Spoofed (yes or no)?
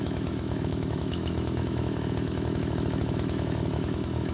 yes